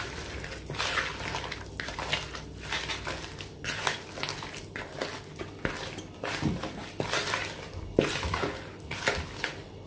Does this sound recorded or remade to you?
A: recorded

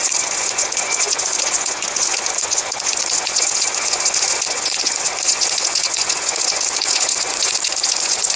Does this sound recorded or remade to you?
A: remade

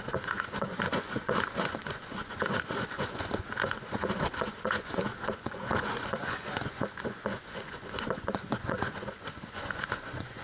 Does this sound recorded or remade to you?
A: remade